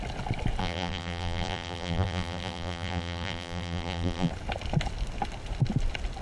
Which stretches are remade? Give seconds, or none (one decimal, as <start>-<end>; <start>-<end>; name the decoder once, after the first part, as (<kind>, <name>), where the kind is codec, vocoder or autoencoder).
0.6-4.3 (vocoder, BigVGAN v2)